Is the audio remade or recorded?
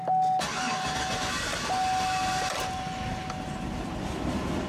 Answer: recorded